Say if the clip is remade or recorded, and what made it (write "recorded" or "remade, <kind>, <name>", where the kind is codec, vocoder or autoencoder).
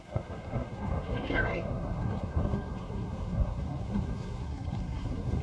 remade, codec, SNAC